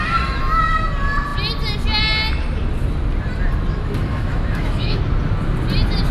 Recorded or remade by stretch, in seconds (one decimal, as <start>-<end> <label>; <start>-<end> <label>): 0.0-4.1 recorded; 4.1-5.0 remade; 5.0-6.1 recorded

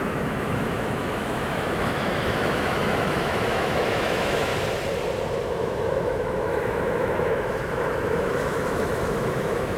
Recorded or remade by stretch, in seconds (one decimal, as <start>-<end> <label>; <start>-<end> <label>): 0.0-4.5 remade; 4.5-5.4 recorded; 5.4-9.8 remade

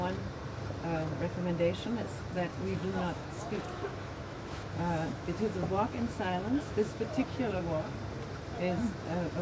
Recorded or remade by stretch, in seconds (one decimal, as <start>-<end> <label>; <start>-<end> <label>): 0.0-2.5 recorded; 2.5-7.6 remade; 7.6-9.4 recorded

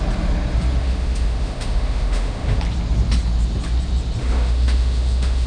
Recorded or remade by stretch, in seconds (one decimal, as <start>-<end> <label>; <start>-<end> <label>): 0.0-0.8 recorded; 0.8-2.6 remade; 2.6-4.2 recorded; 4.2-5.5 remade

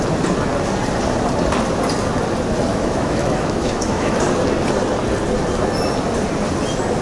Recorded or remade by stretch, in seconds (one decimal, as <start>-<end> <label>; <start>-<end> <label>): 0.0-2.7 recorded; 2.7-4.2 remade; 4.2-7.0 recorded

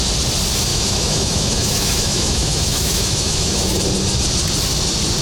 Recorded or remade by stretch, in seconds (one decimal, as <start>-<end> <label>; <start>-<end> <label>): 0.0-0.7 recorded; 0.7-3.7 remade; 3.7-5.2 recorded